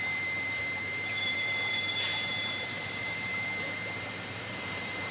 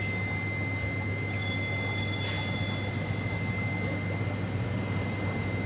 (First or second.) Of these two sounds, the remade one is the first